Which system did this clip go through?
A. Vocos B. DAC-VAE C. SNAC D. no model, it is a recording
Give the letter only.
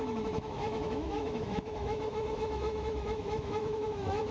B